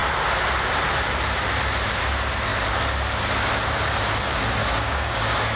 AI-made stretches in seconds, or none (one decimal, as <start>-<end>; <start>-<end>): 4.6-5.6